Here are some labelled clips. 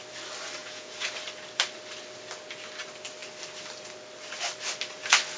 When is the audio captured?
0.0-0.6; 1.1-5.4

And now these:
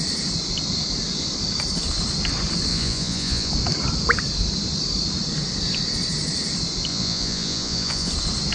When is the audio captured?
0.0-2.7; 3.5-6.9; 8.1-8.5

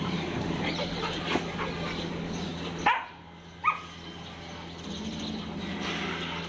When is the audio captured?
0.0-6.5

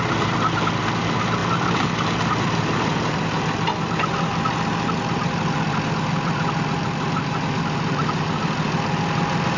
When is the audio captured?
0.0-9.6

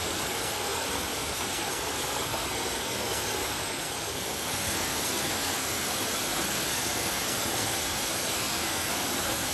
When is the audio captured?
none

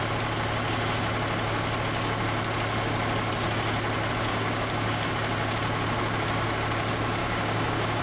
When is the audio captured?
0.0-4.3; 5.1-7.2

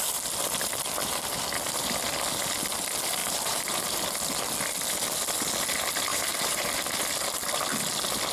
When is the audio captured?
0.0-3.2; 4.0-6.1; 6.7-8.3